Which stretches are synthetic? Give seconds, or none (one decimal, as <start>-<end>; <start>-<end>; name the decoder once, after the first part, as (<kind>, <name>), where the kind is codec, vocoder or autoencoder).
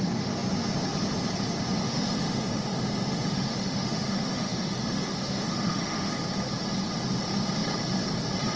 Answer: 1.8-6.1 (autoencoder, DAC-VAE)